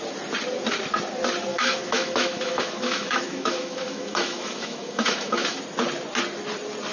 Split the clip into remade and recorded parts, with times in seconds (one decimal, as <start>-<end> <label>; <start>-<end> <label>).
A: 0.0-1.5 recorded; 1.5-5.6 remade; 5.6-6.9 recorded